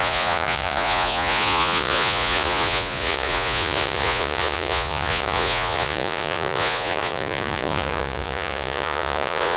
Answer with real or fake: fake